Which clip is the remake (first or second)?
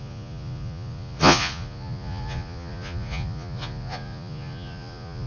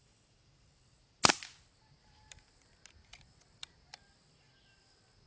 first